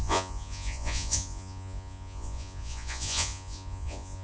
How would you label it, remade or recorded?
remade